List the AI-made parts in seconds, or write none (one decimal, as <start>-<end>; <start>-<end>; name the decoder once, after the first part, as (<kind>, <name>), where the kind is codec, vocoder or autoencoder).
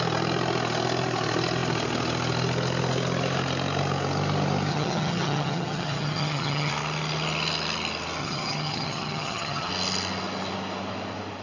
4.7-6.7 (vocoder, HiFi-GAN); 8.2-9.7